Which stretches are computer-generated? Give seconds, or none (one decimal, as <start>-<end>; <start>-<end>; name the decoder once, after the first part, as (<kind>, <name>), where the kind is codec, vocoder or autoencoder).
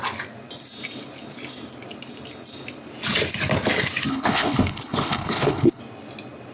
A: 4.1-5.8 (codec, HILCodec)